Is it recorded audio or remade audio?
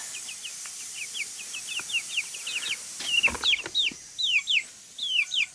recorded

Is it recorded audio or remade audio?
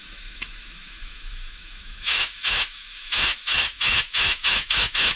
remade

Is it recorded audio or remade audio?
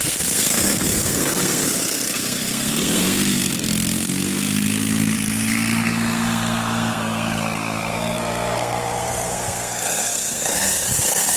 remade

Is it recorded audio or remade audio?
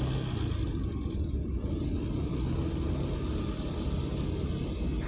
recorded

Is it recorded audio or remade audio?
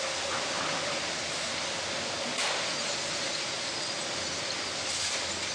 recorded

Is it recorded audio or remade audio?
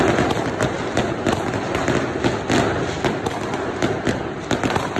recorded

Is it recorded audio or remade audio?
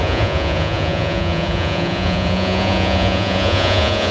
remade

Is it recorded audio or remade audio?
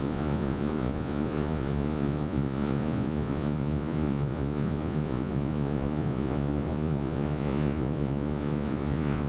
remade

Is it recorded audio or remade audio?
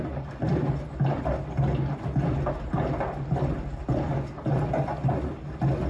recorded